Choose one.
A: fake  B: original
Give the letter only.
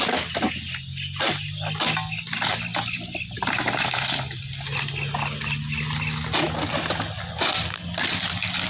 B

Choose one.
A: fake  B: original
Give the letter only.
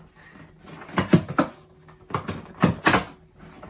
B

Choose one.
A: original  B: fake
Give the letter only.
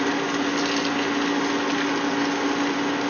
A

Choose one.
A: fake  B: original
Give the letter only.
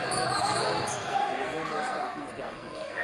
A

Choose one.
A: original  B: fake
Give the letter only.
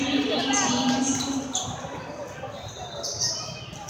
A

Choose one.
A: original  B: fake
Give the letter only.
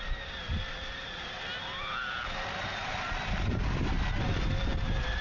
A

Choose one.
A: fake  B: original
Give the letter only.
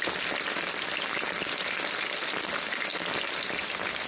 B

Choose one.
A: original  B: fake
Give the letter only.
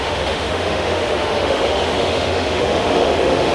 B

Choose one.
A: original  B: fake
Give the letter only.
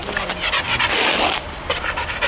A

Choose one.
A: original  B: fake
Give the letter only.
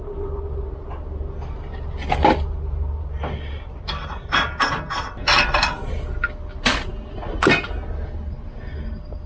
A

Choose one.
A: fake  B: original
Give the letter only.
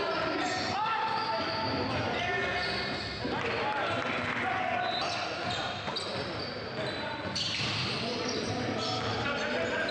B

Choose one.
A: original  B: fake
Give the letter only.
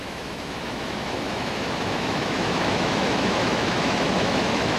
B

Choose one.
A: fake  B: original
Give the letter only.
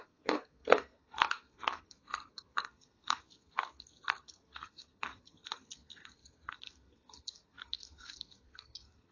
A